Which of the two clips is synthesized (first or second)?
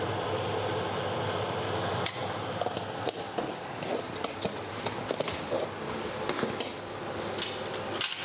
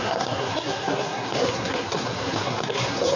second